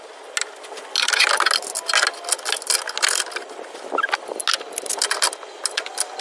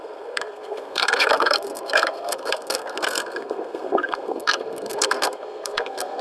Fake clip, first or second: second